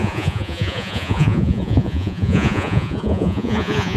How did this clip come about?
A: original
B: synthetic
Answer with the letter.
B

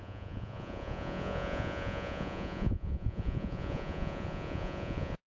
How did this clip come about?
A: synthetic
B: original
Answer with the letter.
A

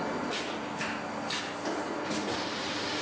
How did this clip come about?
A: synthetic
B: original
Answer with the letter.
B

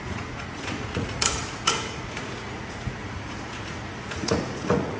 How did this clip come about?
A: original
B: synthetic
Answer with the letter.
B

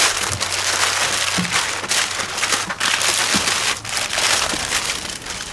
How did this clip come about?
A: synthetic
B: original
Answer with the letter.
B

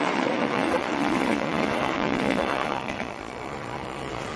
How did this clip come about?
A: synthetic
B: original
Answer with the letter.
A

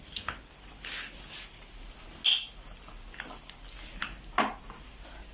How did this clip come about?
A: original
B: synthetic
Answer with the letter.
A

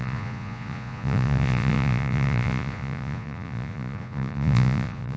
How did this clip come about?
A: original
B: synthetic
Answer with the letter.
B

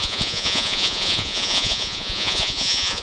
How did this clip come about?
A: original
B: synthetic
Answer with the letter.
B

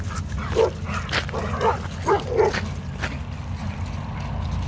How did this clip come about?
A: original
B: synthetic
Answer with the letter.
A